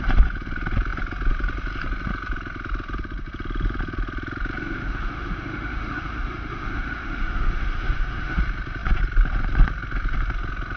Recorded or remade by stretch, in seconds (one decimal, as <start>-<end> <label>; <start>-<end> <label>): 0.0-4.6 recorded; 4.6-8.4 remade; 8.4-10.8 recorded